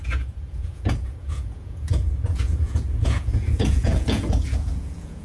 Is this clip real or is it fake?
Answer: fake